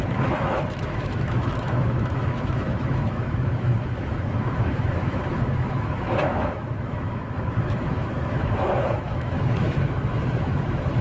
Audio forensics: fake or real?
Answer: fake